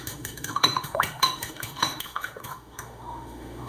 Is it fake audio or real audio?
fake